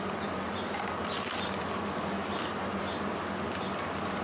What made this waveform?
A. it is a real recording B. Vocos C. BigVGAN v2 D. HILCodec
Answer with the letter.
A